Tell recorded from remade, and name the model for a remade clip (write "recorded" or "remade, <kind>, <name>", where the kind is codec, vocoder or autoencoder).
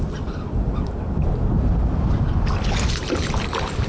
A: recorded